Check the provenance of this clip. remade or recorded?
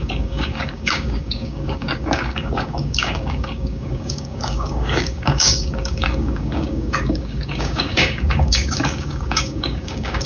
remade